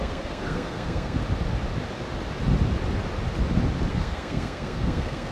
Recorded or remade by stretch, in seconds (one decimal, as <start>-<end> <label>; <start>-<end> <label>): 0.0-1.2 remade; 1.2-3.9 recorded; 3.9-5.3 remade